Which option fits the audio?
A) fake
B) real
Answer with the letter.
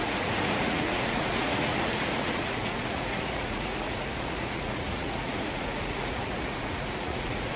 A